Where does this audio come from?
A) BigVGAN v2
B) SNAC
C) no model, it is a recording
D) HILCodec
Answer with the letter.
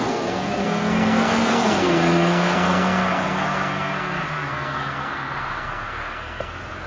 B